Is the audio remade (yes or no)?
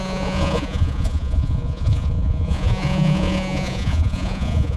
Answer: yes